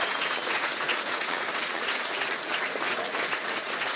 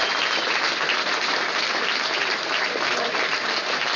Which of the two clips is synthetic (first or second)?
first